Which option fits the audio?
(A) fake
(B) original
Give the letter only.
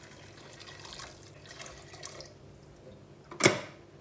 B